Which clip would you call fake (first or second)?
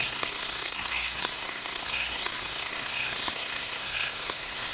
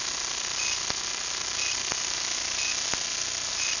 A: first